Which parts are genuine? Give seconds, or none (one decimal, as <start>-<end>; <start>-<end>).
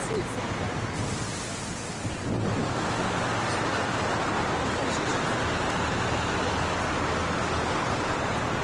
0.0-2.6; 3.2-8.6